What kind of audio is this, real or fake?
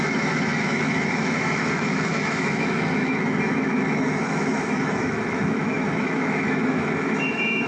fake